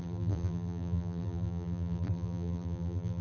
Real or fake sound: fake